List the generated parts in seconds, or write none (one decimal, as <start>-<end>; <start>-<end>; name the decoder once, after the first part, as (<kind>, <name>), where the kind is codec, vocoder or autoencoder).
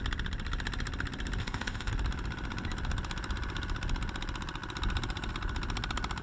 1.4-1.9 (codec, ZipCodec)